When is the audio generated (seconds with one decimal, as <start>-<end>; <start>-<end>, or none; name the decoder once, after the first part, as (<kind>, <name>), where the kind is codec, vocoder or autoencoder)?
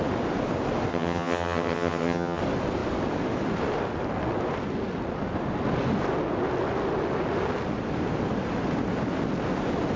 0.9-2.4 (vocoder, HiFi-GAN)